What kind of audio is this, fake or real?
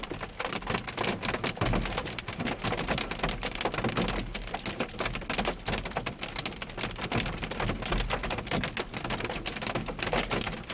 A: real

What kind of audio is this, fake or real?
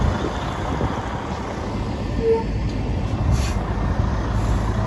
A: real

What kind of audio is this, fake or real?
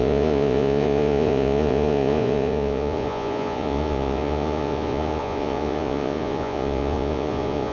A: fake